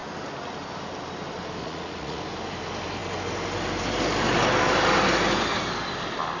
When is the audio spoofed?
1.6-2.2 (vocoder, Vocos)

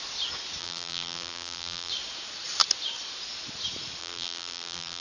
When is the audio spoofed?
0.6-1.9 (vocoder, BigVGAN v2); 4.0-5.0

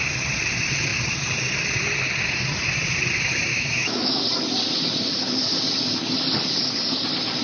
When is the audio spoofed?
3.5-4.2 (autoencoder, DAC-VAE)

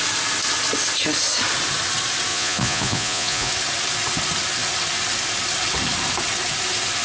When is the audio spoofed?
2.3-3.5 (vocoder, Vocos)

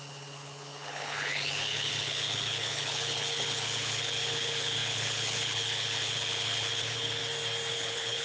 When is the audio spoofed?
0.0-7.2 (codec, HILCodec); 7.7-8.2

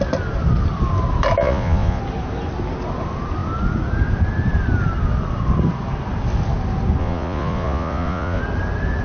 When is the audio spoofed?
1.4-2.0 (vocoder, Vocos); 7.0-8.4

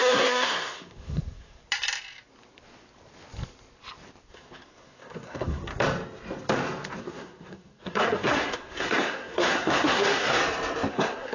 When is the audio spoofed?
0.0-1.6 (codec, SNAC); 4.3-5.7; 7.0-10.4; 10.9-11.3

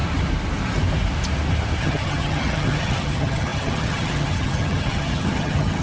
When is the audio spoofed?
1.8-5.8 (vocoder, HiFi-GAN)